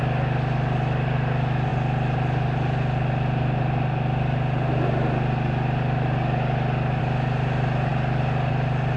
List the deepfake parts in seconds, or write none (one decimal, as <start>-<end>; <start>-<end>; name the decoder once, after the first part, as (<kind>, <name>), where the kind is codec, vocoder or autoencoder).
none

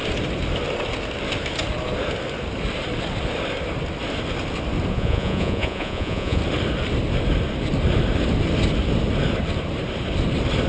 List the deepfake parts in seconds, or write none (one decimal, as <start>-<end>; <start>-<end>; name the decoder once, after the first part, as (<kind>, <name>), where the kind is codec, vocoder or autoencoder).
4.9-6.4 (vocoder, Vocos)

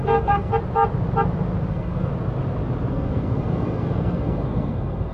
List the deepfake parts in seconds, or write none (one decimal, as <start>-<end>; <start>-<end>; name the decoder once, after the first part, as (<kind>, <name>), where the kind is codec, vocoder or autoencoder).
0.0-0.5 (codec, SNAC); 1.7-2.1; 2.9-5.1

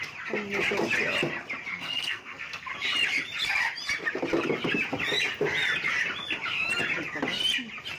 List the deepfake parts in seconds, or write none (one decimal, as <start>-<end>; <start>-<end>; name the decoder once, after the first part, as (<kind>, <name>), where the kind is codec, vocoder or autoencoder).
1.7-2.7 (codec, SNAC)